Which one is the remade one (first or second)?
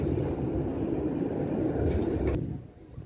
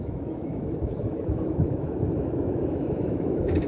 second